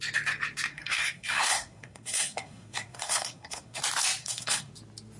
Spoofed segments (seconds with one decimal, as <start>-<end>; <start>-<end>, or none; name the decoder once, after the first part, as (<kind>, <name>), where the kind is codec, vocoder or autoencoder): 0.7-3.8 (codec, SNAC); 4.2-4.7